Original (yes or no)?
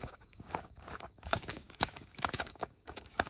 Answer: no